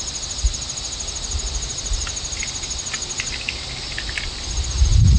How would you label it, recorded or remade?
recorded